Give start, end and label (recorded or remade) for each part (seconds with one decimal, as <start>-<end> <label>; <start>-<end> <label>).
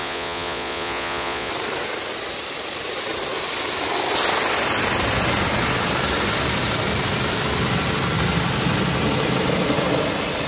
0.0-1.5 remade; 1.5-10.5 recorded